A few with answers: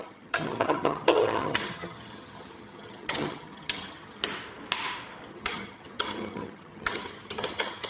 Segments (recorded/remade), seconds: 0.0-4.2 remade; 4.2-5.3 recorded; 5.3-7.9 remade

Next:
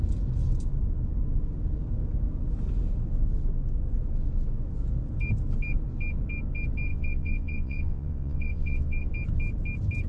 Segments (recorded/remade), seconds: 0.0-6.9 recorded; 6.9-9.1 remade; 9.1-10.1 recorded

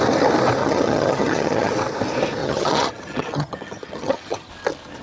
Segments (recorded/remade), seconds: 0.0-0.6 recorded; 0.6-1.7 remade; 1.7-2.4 recorded; 2.4-4.5 remade; 4.5-5.0 recorded

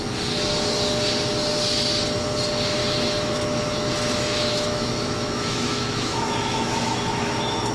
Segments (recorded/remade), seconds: 0.0-2.8 recorded; 2.8-7.7 remade

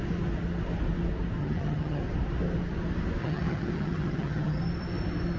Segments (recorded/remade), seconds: 0.0-1.4 recorded; 1.4-2.0 remade; 2.0-3.2 recorded; 3.2-4.6 remade; 4.6-5.4 recorded

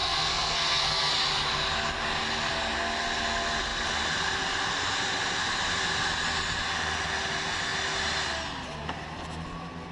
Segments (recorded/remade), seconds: 0.0-1.1 remade; 1.1-9.9 recorded

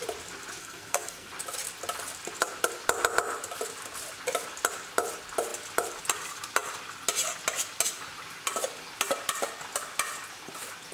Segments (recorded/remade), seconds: 0.0-0.6 recorded; 0.6-1.3 remade; 1.3-10.9 recorded